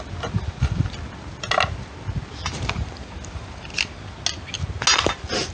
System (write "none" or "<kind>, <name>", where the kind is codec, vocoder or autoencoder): none